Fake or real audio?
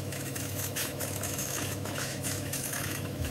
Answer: fake